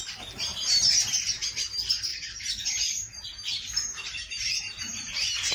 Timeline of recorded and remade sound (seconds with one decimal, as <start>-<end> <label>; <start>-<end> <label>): 0.0-0.5 recorded; 0.5-1.1 remade; 1.1-2.1 recorded; 2.1-5.5 remade